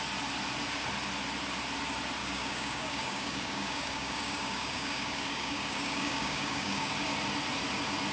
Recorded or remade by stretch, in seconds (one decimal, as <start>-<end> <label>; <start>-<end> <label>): 0.0-2.2 recorded; 2.2-6.9 remade; 6.9-8.1 recorded